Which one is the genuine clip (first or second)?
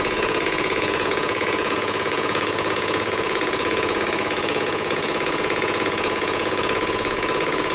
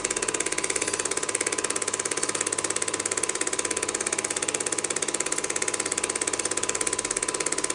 second